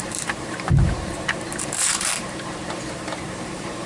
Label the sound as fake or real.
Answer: fake